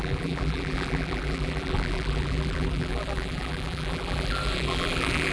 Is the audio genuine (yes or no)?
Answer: no